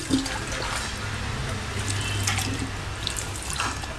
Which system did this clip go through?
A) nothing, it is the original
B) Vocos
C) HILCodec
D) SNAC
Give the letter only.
A